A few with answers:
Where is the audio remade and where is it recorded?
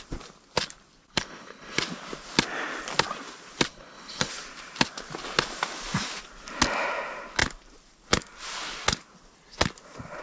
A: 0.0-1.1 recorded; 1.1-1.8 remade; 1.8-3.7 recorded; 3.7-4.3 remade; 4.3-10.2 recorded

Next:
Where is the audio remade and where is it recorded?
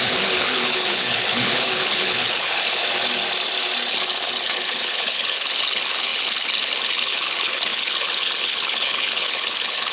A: 0.0-2.8 remade; 2.8-3.9 recorded; 3.9-9.9 remade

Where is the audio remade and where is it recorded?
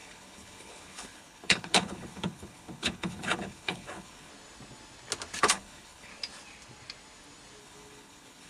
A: 0.0-4.3 remade; 4.3-5.4 recorded; 5.4-6.1 remade; 6.1-7.6 recorded; 7.6-8.5 remade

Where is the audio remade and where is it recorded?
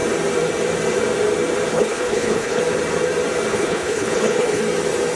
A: 0.0-1.7 recorded; 1.7-2.6 remade; 2.6-3.5 recorded; 3.5-4.6 remade; 4.6-5.2 recorded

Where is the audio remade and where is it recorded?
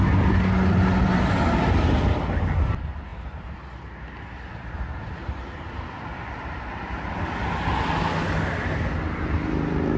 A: 0.0-10.0 recorded